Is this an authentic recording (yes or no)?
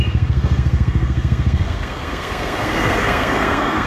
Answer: no